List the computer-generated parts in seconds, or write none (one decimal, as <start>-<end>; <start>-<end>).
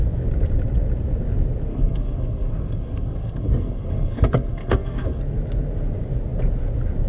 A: 1.7-5.2